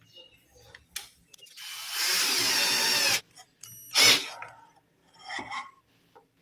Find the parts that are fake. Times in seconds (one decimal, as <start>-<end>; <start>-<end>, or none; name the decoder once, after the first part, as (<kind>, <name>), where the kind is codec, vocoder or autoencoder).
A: 5.0-6.4 (vocoder, BigVGAN v2)